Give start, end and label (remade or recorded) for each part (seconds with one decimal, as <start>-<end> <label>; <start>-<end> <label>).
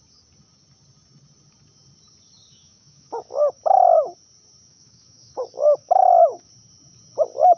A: 0.0-2.5 recorded; 2.5-3.6 remade; 3.6-4.7 recorded; 4.7-6.5 remade; 6.5-7.6 recorded